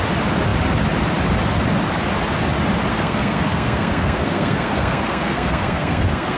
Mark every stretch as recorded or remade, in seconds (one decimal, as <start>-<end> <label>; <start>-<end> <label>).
0.0-2.9 recorded; 2.9-6.4 remade